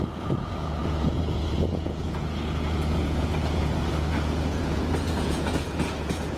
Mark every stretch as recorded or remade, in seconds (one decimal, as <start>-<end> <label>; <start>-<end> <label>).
0.0-6.4 remade